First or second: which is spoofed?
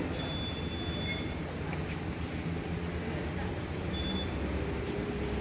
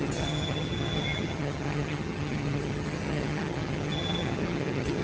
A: second